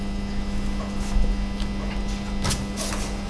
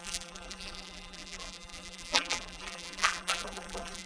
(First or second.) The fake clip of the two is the second